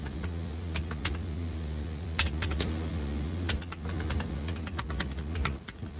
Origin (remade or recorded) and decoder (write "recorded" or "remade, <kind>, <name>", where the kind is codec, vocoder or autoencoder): remade, vocoder, Vocos